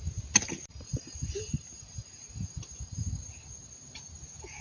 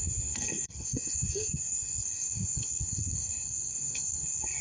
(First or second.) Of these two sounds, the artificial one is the second